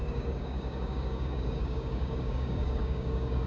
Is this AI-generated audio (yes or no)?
yes